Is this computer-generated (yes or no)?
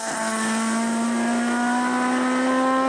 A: no